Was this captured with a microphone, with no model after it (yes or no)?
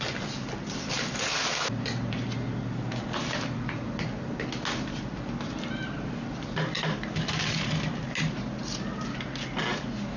yes